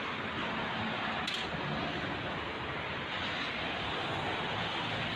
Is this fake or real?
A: real